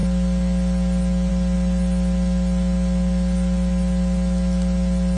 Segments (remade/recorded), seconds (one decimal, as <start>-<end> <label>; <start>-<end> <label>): 0.0-5.2 recorded